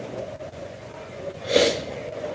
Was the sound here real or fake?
fake